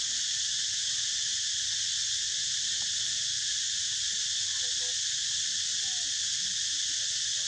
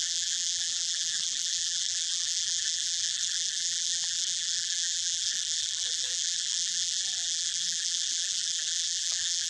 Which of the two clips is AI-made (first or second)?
second